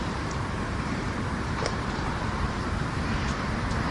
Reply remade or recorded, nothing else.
remade